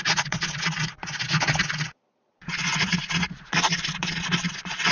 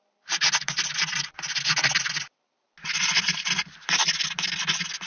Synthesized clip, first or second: first